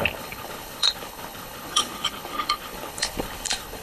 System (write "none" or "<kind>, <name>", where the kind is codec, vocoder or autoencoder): codec, HILCodec